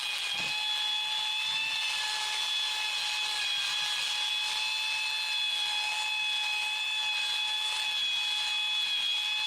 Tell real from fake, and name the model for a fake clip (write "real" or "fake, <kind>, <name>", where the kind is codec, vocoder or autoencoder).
real